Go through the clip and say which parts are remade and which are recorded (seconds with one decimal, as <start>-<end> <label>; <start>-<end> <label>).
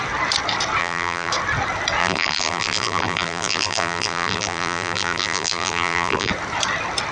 0.0-0.8 recorded; 0.8-1.3 remade; 1.3-2.0 recorded; 2.0-6.3 remade; 6.3-7.1 recorded